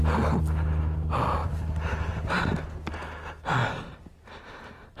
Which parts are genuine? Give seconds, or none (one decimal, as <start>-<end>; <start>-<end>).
0.0-1.4; 2.5-5.0